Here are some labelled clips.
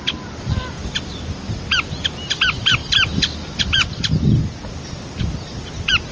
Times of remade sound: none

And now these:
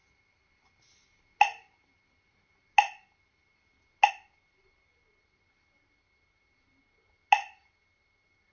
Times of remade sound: none

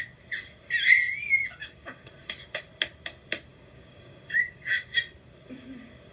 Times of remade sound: 1.6-2.1 (codec, DAC); 3.5-4.9

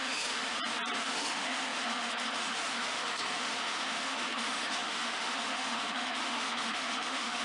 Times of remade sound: 0.0-0.4 (autoencoder, DAC-VAE); 1.0-7.4

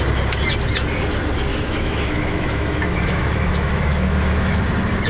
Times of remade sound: 1.5-4.6 (autoencoder, DAC-VAE)

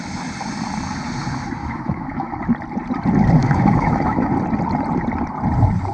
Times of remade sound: 1.6-2.4 (autoencoder, DAC-VAE); 3.4-4.3

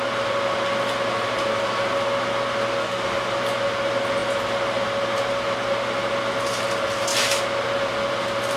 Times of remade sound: 2.8-3.4 (codec, DAC)